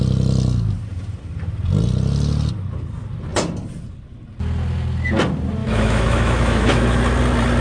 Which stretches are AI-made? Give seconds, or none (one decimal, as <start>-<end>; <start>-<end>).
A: 5.6-7.0